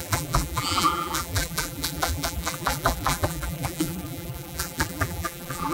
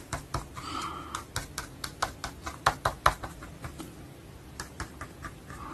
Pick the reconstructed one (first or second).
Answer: first